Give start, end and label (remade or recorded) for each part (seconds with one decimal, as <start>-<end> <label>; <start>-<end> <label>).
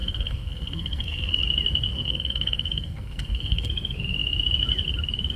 0.0-1.4 remade; 1.4-1.9 recorded; 1.9-3.7 remade; 3.7-5.4 recorded